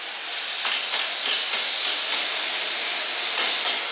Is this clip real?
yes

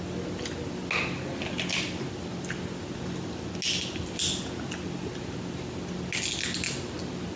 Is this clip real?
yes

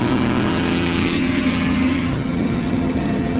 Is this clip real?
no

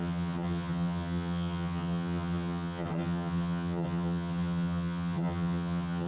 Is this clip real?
no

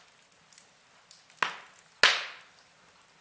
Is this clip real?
yes